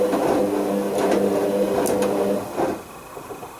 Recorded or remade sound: recorded